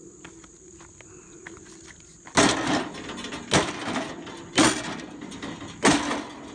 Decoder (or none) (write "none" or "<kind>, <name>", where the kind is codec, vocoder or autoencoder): none